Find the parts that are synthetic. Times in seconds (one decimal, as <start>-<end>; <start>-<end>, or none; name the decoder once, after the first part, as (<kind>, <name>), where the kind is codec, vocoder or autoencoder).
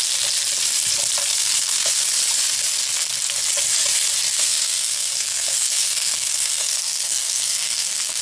1.3-2.0 (codec, SNAC); 4.3-8.2